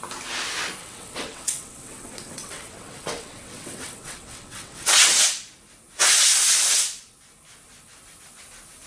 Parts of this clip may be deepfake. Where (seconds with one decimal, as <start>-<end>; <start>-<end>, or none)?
0.8-5.2